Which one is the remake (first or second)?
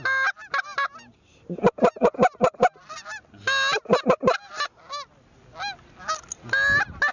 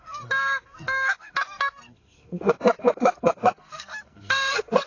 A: second